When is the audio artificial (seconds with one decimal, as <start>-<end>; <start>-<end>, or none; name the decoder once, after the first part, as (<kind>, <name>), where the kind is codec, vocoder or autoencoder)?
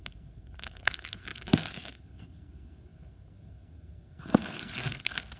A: 0.0-5.4 (codec, SNAC)